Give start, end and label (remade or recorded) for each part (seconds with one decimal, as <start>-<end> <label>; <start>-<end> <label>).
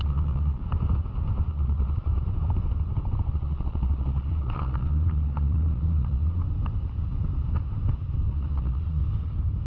0.0-0.6 remade; 0.6-1.5 recorded; 1.5-2.1 remade; 2.1-3.3 recorded; 3.3-6.4 remade; 6.4-8.3 recorded; 8.3-9.0 remade; 9.0-9.7 recorded